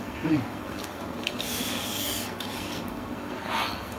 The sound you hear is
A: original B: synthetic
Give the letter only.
B